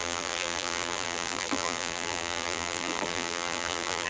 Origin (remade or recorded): remade